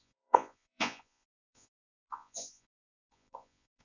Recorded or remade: remade